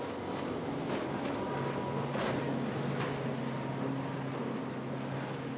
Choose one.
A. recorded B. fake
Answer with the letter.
A